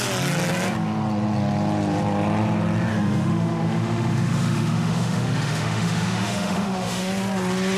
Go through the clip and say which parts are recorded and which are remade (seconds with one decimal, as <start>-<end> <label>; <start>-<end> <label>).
0.0-2.9 recorded; 2.9-7.1 remade; 7.1-7.8 recorded